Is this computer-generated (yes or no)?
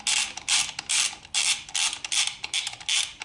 no